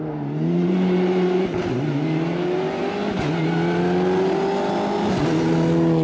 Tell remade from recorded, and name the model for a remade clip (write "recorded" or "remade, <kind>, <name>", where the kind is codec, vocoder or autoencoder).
recorded